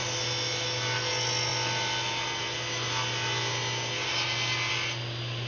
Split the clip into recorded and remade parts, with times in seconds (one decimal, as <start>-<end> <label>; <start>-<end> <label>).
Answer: 0.0-5.5 recorded